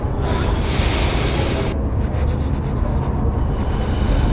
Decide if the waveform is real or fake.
real